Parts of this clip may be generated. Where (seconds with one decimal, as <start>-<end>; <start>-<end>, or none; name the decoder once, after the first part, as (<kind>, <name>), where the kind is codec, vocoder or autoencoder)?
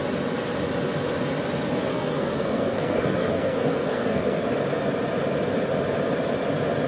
1.9-4.5 (codec, SNAC)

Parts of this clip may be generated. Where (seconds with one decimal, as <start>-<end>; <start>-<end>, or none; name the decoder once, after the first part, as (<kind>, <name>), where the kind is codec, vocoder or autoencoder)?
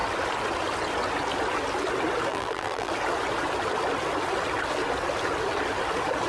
2.3-2.9 (vocoder, BigVGAN v2)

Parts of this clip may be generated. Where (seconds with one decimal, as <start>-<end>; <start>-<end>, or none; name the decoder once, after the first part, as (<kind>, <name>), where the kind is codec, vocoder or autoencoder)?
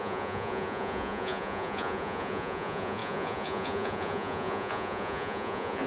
0.0-5.9 (vocoder, Vocos)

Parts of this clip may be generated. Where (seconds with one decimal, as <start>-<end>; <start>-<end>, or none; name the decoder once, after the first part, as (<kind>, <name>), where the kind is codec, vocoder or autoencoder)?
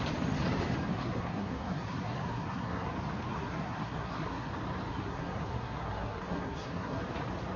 0.9-2.9 (codec, SNAC); 3.3-4.5; 4.9-7.0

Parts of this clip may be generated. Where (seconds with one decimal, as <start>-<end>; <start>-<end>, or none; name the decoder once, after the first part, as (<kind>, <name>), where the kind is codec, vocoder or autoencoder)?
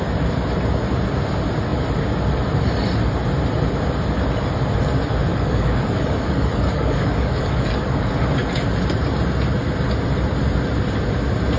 5.3-8.1 (codec, DAC)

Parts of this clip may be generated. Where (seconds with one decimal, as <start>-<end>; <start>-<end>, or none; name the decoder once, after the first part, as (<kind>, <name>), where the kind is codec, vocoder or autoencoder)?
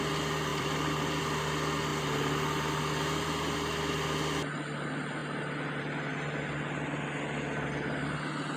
0.5-1.2 (vocoder, BigVGAN v2)